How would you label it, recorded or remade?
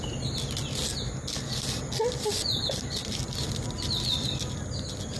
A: recorded